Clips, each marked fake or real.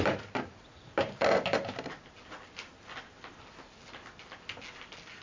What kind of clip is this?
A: real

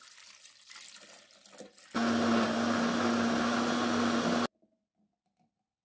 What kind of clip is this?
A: real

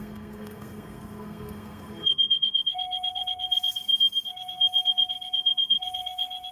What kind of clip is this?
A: fake